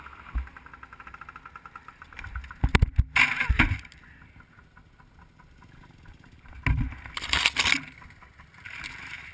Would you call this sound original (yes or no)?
yes